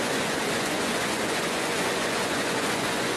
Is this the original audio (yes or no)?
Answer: no